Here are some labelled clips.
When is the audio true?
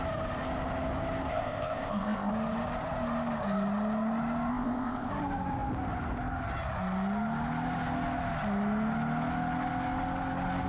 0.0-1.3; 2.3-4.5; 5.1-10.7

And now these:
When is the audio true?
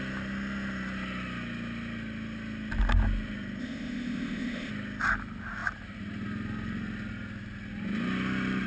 0.0-3.6; 4.7-8.7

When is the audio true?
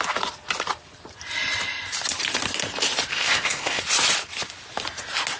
0.0-3.1; 3.8-5.4